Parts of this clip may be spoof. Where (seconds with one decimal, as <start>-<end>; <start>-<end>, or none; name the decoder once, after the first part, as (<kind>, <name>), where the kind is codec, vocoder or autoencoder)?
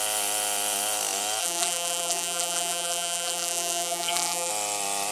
1.4-4.5 (vocoder, BigVGAN v2)